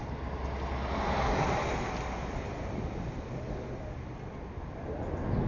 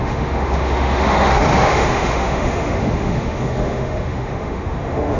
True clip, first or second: first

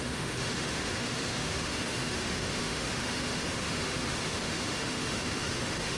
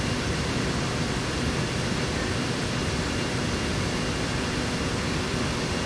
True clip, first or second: second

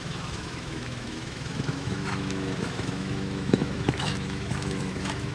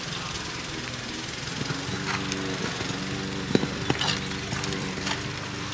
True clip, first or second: second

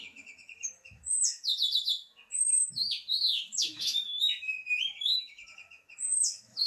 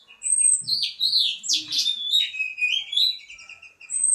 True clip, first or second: second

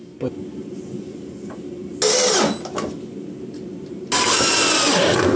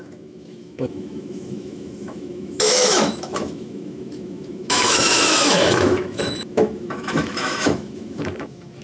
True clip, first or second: first